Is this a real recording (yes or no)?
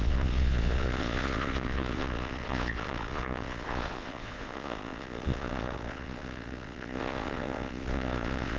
no